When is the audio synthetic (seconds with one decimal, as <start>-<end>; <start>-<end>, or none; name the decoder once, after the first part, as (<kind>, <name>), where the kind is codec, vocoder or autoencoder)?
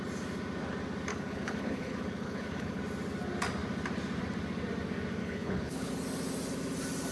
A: 1.1-2.8 (codec, HILCodec); 5.2-5.9